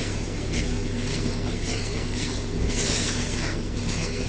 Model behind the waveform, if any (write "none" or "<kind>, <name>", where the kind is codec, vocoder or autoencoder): codec, SNAC